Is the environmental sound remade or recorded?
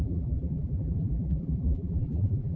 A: remade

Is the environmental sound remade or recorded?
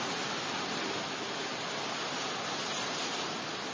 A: recorded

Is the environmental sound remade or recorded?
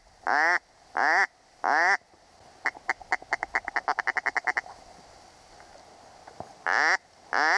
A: recorded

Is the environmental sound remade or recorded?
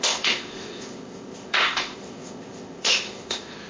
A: remade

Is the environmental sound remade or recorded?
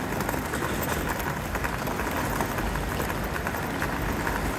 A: recorded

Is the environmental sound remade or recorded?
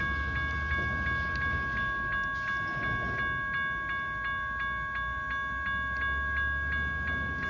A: recorded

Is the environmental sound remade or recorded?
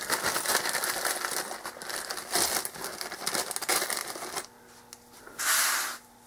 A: recorded